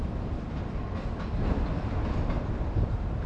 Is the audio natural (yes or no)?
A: yes